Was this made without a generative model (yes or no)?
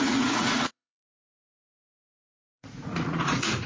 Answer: no